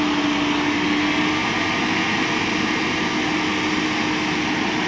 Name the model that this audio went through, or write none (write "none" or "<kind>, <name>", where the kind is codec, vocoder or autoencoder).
none